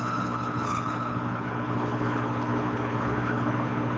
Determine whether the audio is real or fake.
fake